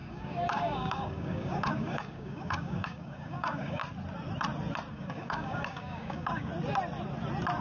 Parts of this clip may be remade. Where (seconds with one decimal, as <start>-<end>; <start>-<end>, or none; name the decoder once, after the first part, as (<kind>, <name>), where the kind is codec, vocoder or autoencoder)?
0.0-3.8 (codec, DAC); 4.9-6.5

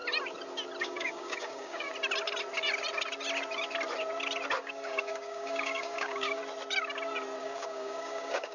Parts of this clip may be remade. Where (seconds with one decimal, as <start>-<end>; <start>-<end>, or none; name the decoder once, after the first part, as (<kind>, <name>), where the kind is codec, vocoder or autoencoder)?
0.8-1.9 (codec, DAC); 4.6-6.4; 7.4-8.5

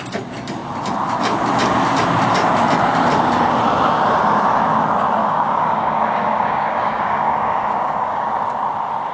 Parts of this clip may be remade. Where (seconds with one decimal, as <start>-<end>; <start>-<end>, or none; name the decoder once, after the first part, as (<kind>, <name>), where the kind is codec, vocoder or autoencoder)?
5.2-8.3 (codec, DAC)

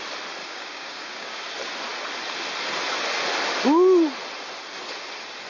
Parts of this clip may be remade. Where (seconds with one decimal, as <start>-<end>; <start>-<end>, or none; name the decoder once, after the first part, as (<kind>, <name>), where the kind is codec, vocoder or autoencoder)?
0.4-1.4 (codec, DAC)